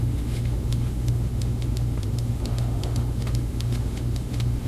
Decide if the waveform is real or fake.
fake